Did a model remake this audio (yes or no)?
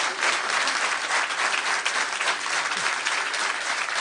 no